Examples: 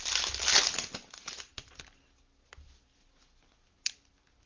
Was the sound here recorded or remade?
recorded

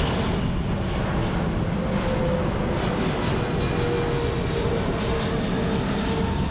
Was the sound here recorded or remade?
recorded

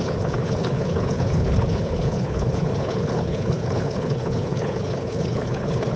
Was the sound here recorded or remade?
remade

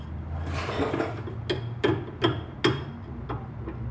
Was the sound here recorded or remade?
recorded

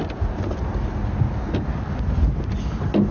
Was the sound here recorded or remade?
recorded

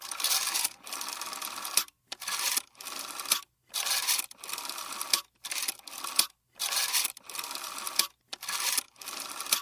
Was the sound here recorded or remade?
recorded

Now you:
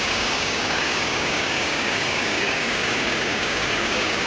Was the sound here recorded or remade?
remade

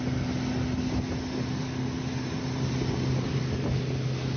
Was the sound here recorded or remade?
recorded